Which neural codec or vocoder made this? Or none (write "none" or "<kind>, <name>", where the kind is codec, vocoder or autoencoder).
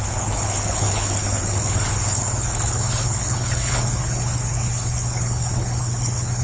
codec, HILCodec